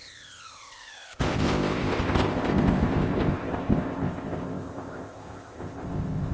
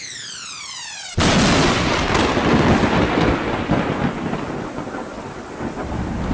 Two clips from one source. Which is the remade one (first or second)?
first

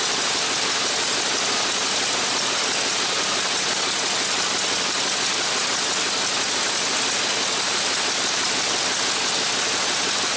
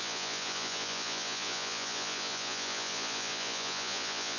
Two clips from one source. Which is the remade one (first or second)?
second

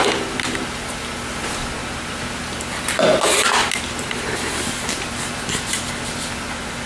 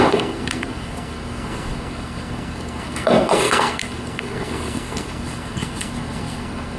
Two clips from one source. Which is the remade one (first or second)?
second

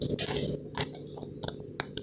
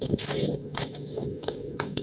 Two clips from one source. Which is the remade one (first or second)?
second